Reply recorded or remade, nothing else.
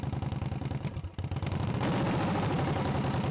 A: recorded